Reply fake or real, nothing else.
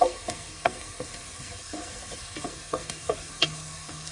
fake